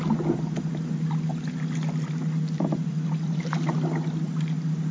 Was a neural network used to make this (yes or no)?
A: no